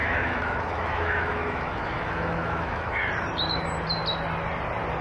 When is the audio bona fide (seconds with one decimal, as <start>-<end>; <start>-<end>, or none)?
3.0-5.0